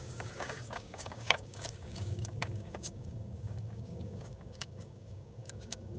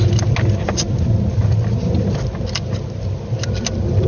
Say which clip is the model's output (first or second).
first